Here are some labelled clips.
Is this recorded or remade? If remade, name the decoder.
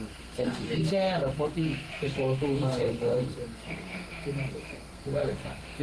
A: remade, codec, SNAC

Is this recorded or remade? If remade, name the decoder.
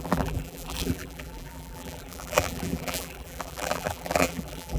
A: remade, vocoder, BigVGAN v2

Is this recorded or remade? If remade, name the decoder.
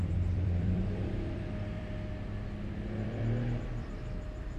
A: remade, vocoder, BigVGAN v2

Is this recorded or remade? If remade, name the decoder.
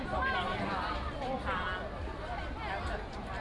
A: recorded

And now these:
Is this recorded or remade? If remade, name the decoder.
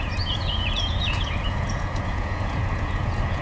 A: remade, vocoder, Vocos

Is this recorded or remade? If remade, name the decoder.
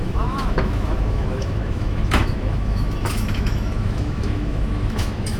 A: remade, autoencoder, DAC-VAE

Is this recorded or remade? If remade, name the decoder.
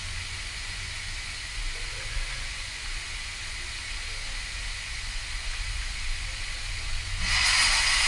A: remade, vocoder, Vocos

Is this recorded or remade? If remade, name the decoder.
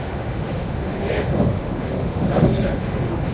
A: remade, autoencoder, DAC-VAE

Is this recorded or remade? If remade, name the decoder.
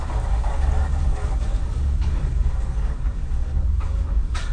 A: remade, codec, DAC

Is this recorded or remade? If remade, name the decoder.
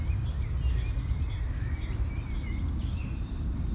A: recorded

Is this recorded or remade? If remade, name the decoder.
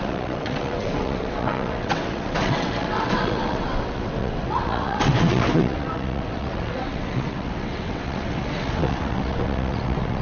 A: remade, vocoder, WaveNeXt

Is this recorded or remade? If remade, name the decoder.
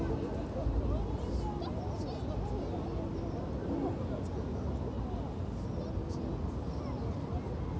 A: recorded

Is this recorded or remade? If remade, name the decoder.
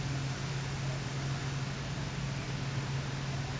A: recorded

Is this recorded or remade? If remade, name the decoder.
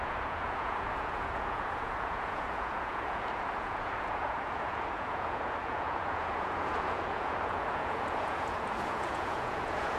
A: remade, vocoder, Vocos